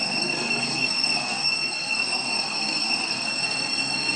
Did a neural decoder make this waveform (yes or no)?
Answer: yes